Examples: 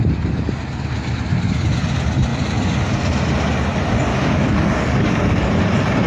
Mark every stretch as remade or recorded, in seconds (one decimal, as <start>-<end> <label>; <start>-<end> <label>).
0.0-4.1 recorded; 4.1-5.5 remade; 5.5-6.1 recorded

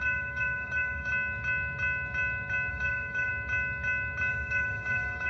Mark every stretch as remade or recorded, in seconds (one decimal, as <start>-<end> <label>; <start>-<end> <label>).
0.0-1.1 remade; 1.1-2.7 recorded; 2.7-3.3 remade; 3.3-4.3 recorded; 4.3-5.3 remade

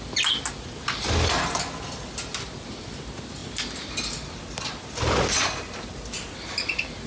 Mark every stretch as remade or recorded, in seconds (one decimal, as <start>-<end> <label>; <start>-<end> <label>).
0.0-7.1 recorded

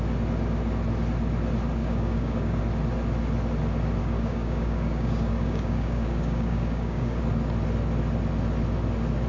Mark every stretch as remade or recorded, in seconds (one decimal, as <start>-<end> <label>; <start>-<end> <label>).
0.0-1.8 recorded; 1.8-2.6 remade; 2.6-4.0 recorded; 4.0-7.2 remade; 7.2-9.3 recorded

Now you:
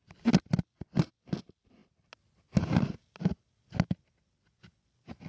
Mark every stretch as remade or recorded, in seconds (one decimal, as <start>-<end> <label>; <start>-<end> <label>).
0.0-5.3 recorded